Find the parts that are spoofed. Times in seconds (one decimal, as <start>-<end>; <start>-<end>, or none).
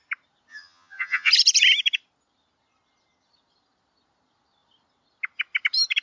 0.5-1.3